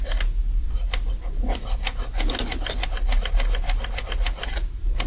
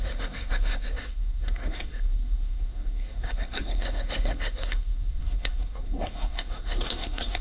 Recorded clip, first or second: first